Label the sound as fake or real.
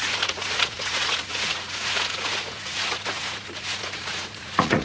fake